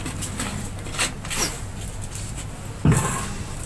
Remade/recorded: recorded